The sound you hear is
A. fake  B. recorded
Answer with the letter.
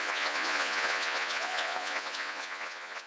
A